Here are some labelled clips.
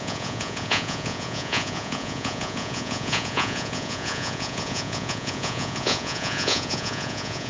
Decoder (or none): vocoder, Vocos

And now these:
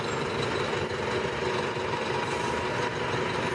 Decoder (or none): none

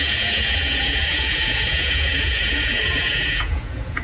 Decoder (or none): vocoder, Vocos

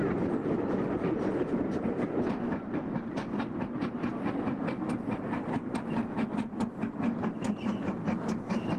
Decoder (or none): none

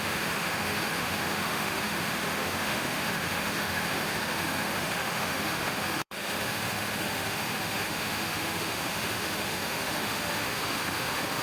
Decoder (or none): autoencoder, DAC-VAE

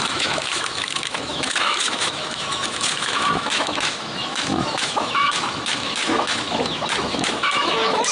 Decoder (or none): autoencoder, DAC-VAE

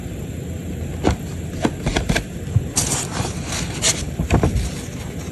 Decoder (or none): none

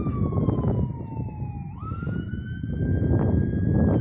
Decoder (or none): none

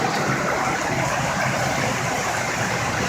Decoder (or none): vocoder, BigVGAN v2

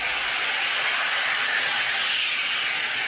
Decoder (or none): none